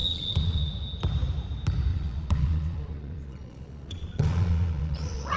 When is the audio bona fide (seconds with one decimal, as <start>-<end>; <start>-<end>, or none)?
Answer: 0.7-1.9